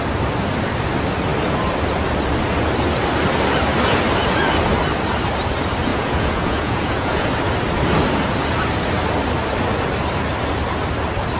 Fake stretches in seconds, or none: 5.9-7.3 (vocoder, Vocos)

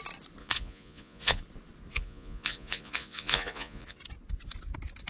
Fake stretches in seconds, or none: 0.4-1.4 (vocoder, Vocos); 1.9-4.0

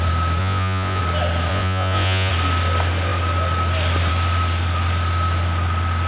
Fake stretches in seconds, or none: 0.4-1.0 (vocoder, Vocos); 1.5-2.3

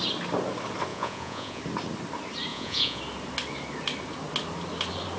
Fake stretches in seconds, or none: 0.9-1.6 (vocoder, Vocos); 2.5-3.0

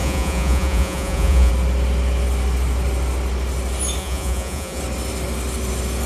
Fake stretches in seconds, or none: 0.0-1.5 (vocoder, Vocos); 4.0-4.8

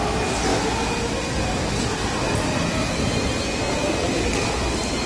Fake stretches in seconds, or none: none